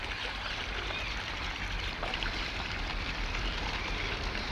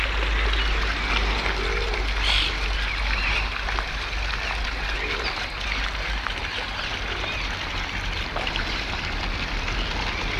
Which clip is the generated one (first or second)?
first